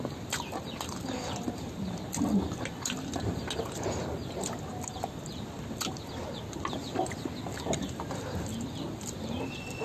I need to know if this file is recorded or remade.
recorded